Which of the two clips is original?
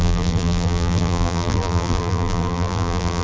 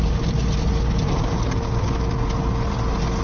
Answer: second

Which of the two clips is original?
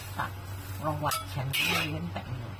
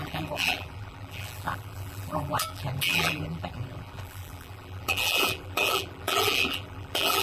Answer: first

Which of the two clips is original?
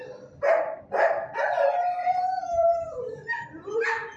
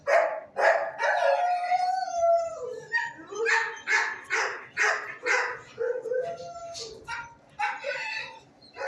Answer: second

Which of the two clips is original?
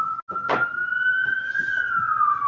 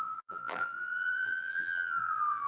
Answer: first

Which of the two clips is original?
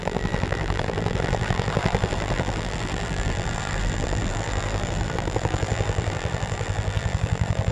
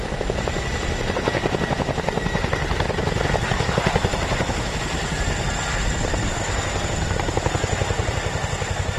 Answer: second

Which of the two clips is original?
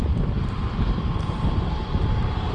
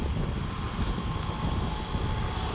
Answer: second